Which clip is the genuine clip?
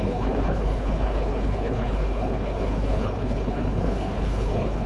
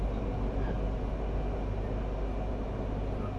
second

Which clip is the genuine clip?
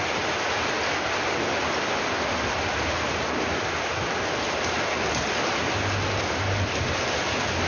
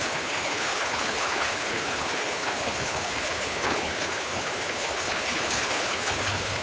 first